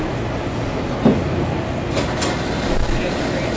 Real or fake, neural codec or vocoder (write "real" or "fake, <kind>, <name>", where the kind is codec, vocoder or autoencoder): real